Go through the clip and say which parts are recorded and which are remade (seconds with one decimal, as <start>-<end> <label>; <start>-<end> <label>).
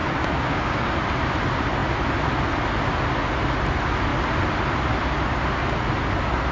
0.0-0.9 remade; 0.9-6.5 recorded